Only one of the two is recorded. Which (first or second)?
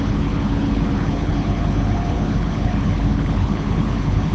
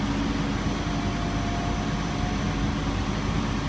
second